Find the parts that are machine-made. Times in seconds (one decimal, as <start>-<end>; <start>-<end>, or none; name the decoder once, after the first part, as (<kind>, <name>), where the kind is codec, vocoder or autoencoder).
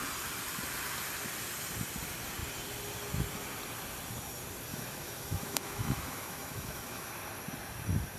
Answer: 4.7-7.1 (autoencoder, DAC-VAE)